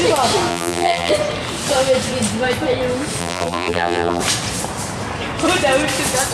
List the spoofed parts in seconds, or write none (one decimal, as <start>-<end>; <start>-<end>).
0.5-1.1; 3.2-4.2